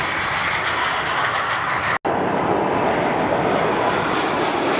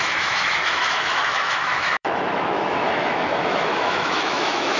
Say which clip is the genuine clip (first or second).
first